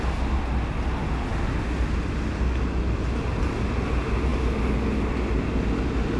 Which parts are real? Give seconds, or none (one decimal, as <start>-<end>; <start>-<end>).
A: 0.0-6.2